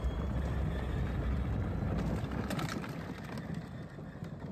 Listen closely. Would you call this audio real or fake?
real